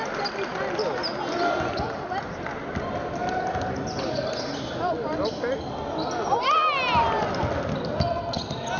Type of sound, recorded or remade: recorded